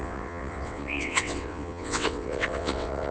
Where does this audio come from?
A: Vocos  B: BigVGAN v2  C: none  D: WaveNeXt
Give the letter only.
D